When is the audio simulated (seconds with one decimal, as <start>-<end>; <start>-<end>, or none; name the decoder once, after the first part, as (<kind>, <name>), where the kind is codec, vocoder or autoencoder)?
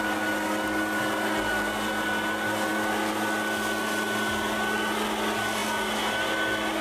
none